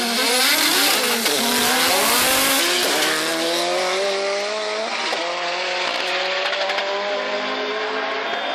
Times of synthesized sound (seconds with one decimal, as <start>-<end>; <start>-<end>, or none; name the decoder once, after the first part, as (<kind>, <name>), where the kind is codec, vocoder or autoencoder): none